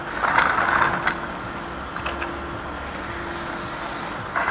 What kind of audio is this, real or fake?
real